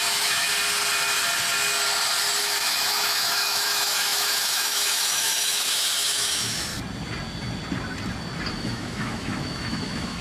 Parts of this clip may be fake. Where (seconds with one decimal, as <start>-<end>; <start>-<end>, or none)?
0.0-0.5; 2.4-6.7; 8.5-10.2